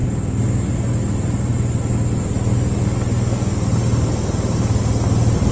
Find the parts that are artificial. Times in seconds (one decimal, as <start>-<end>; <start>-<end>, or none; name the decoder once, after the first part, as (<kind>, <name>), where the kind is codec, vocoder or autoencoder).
none